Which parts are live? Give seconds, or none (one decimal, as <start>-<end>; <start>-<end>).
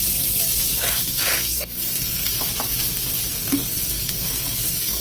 0.0-0.7; 2.5-3.3